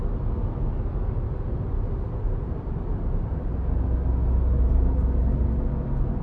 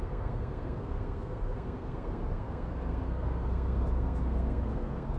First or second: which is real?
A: first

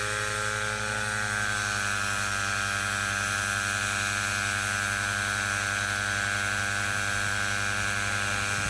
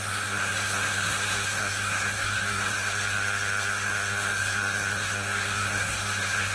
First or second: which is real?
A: first